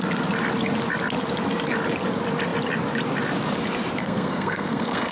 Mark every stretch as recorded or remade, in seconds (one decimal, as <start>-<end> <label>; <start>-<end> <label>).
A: 0.0-4.0 recorded; 4.0-5.1 remade